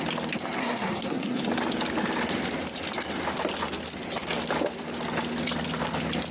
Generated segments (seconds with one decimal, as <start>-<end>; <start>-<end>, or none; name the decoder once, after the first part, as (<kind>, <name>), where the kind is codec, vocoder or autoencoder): 0.6-1.4 (codec, SNAC)